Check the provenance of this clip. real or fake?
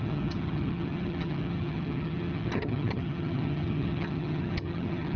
fake